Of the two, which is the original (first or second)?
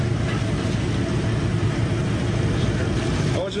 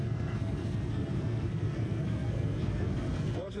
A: first